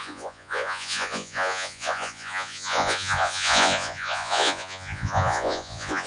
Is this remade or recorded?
remade